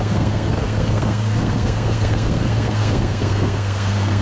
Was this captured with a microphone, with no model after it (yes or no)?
no